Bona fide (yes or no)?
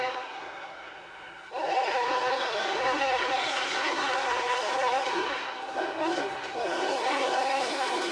no